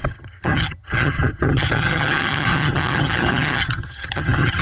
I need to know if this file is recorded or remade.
remade